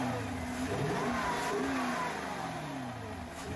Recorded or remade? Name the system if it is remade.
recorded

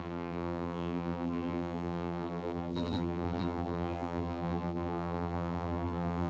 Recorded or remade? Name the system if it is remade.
remade, vocoder, BigVGAN v2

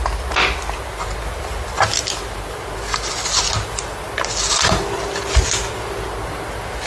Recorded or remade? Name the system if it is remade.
recorded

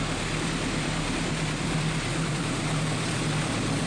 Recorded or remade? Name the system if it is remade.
remade, vocoder, BigVGAN v2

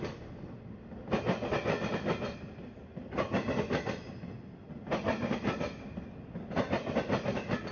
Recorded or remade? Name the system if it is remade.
recorded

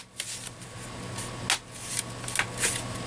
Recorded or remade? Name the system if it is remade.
recorded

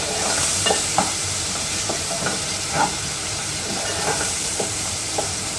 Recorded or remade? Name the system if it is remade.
remade, vocoder, BigVGAN v2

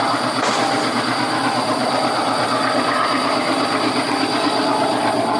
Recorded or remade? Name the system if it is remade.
remade, vocoder, BigVGAN v2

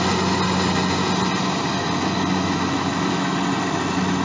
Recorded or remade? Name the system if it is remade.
recorded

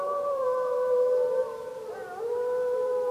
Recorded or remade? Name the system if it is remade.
remade, vocoder, BigVGAN v2